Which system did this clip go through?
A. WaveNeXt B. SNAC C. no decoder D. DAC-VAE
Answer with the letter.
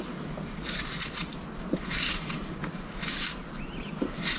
C